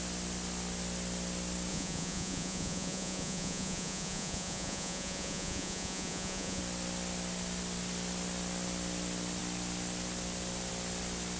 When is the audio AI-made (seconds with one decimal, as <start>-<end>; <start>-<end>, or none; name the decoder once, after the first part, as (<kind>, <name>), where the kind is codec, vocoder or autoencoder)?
1.7-6.6 (vocoder, Vocos)